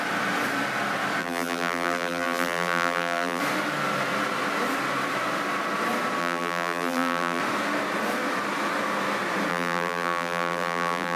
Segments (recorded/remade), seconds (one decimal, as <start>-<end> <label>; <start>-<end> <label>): 0.0-1.2 recorded; 1.2-3.4 remade; 3.4-6.2 recorded; 6.2-7.4 remade; 7.4-9.5 recorded; 9.5-11.2 remade